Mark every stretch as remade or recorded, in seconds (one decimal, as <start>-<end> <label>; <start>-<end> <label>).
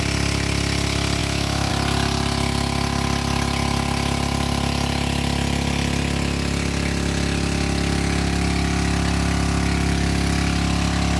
0.0-1.2 recorded; 1.2-1.7 remade; 1.7-11.2 recorded